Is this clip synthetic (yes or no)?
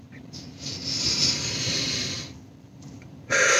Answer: yes